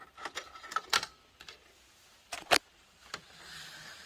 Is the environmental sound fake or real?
real